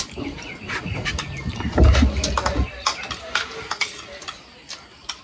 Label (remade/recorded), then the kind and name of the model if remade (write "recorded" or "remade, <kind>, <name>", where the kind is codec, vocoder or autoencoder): recorded